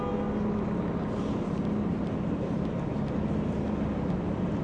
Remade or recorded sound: recorded